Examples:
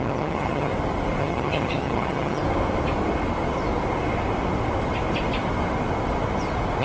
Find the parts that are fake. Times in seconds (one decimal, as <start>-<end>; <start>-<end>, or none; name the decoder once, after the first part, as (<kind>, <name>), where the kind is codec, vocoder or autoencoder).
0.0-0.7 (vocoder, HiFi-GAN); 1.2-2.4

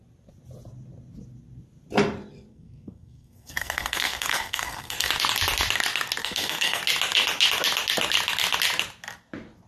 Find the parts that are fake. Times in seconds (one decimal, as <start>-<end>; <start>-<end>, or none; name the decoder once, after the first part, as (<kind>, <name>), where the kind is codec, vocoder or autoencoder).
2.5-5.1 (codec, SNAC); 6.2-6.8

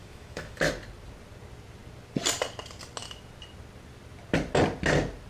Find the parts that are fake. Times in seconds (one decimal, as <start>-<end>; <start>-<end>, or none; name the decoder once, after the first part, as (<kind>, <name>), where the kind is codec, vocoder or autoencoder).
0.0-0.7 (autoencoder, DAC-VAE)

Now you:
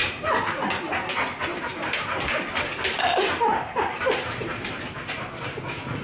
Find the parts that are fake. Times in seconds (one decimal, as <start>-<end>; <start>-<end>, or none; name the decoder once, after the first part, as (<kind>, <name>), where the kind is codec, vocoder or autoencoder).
0.0-0.8 (vocoder, BigVGAN v2); 1.7-5.3

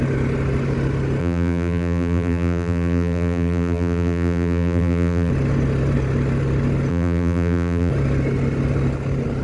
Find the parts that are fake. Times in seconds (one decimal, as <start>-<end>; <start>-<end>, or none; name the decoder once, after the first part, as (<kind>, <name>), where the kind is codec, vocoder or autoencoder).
1.2-5.3 (vocoder, BigVGAN v2); 6.9-7.9